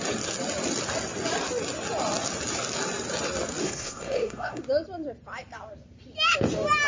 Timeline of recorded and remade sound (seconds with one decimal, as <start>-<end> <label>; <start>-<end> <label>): 0.0-3.6 recorded; 3.6-4.6 remade; 4.6-6.9 recorded